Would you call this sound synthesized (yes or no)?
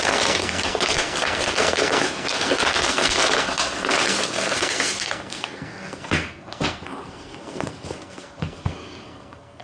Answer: yes